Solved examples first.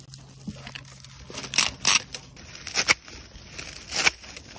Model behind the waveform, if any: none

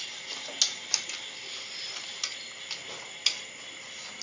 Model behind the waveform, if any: none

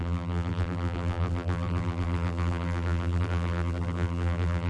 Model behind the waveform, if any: vocoder, BigVGAN v2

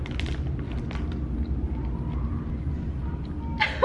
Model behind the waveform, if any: none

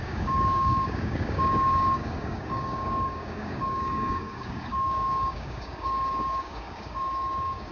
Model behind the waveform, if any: codec, DAC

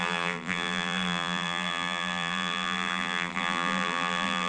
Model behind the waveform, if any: vocoder, BigVGAN v2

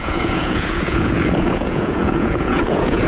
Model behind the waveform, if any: vocoder, Vocos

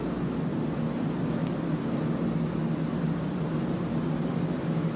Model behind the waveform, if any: none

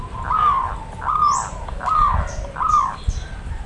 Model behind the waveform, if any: none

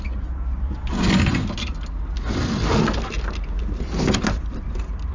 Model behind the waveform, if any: none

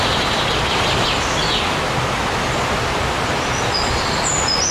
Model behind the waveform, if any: none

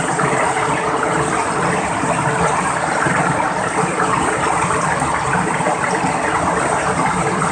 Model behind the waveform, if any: none